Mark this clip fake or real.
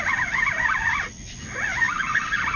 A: real